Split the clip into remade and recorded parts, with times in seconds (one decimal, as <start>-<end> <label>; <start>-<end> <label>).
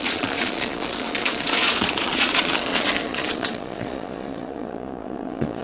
0.0-5.6 remade